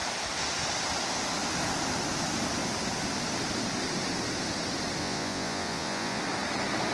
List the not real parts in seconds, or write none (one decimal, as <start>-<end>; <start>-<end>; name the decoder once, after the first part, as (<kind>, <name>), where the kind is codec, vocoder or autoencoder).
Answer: 5.0-6.2 (vocoder, Vocos)